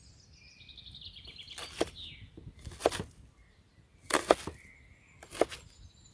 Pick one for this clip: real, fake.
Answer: real